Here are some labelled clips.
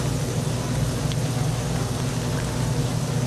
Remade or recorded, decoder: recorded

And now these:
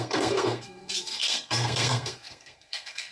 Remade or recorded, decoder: remade, codec, SNAC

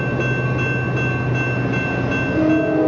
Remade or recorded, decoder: recorded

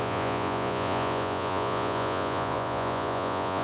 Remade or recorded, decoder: remade, vocoder, Vocos